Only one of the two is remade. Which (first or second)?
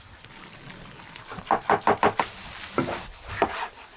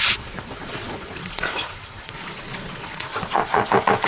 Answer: second